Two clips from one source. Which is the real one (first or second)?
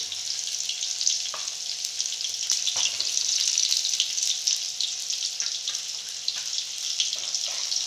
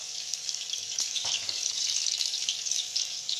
first